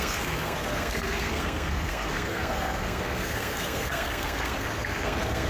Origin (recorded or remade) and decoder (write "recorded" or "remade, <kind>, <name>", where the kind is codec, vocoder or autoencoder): remade, codec, SNAC